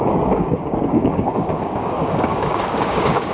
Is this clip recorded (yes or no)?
no